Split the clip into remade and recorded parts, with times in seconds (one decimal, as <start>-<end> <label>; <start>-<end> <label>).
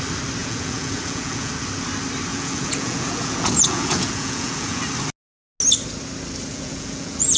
0.0-0.4 recorded; 0.4-1.5 remade; 1.5-2.3 recorded; 2.3-4.8 remade; 4.8-6.5 recorded; 6.5-7.4 remade